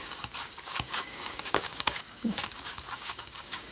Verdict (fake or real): fake